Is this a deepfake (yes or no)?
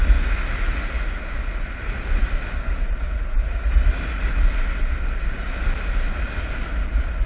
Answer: no